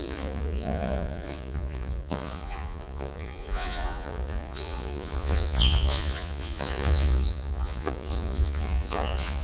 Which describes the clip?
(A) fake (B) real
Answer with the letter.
A